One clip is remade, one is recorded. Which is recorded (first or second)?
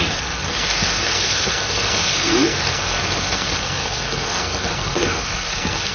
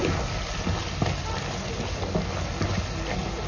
second